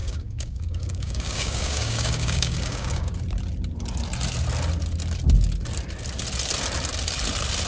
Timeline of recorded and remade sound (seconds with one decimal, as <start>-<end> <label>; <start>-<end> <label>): 0.0-3.1 remade; 3.1-7.7 recorded